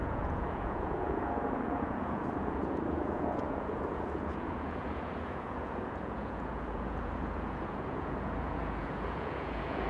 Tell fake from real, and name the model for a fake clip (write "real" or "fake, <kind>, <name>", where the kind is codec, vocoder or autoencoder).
fake, vocoder, Vocos